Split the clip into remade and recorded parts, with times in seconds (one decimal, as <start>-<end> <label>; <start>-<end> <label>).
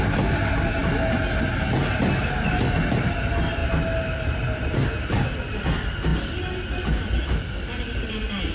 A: 0.0-8.5 recorded